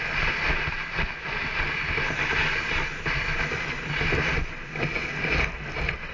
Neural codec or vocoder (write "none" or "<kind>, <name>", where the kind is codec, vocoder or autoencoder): none